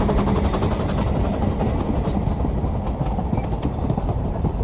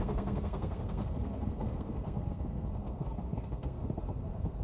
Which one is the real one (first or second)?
first